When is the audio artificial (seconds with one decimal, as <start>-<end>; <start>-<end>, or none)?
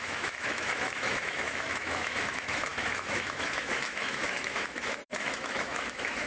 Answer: 0.0-6.3